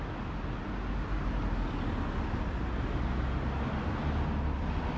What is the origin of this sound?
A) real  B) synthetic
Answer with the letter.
A